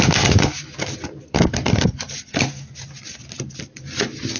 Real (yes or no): yes